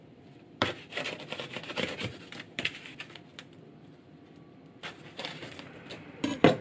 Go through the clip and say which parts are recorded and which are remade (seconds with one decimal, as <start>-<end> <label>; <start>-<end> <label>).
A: 0.0-6.6 remade